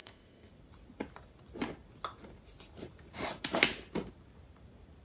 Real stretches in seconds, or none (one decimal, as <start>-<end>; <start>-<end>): 0.5-5.0